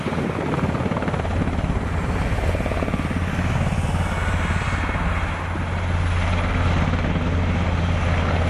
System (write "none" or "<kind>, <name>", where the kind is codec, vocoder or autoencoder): none